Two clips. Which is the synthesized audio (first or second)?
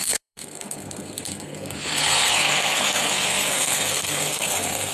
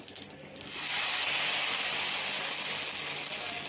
first